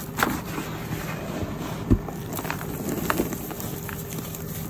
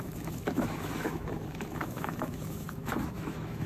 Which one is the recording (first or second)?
first